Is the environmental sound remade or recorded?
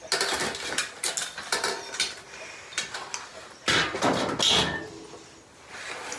recorded